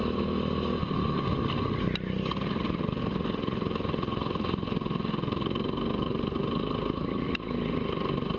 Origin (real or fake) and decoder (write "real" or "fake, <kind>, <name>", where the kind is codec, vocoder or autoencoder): real